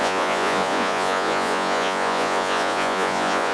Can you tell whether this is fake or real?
fake